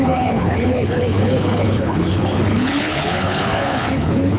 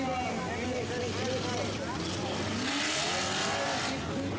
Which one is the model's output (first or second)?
first